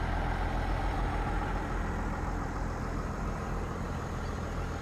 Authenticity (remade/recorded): recorded